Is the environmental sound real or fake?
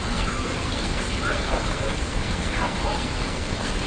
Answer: fake